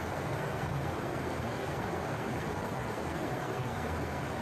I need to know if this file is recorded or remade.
remade